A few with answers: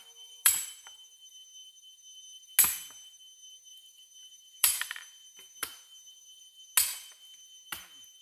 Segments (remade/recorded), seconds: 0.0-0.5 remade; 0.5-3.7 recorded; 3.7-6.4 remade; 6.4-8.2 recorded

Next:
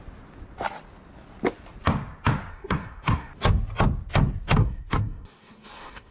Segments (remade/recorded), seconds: 0.0-2.5 recorded; 2.5-3.3 remade; 3.3-4.6 recorded; 4.6-6.1 remade

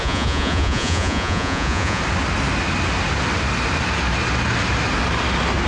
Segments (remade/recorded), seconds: 0.0-2.0 remade; 2.0-5.7 recorded